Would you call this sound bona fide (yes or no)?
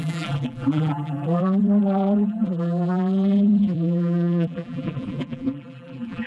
no